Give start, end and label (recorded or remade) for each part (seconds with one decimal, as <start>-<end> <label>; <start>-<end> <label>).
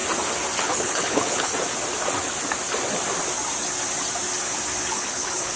0.0-0.6 recorded; 0.6-1.5 remade; 1.5-4.9 recorded; 4.9-5.6 remade